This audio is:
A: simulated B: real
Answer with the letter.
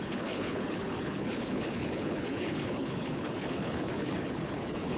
A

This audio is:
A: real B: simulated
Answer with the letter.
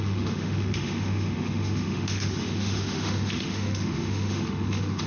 B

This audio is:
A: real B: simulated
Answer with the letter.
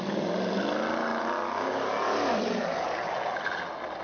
A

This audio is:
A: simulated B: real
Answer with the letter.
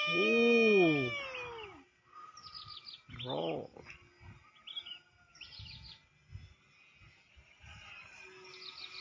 B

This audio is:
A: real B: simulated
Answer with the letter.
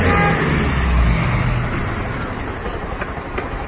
A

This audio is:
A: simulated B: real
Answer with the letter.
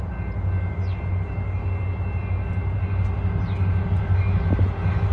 B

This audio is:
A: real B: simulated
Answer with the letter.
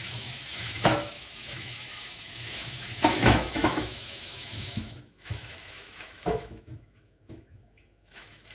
B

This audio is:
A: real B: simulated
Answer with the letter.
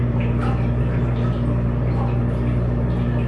A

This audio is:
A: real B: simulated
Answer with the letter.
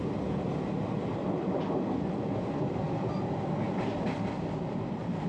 A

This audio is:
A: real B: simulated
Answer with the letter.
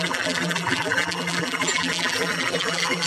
B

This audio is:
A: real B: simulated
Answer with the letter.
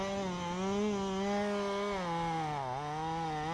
A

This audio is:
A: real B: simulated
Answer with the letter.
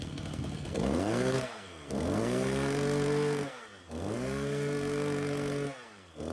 B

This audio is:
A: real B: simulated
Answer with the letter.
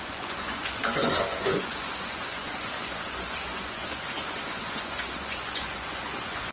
B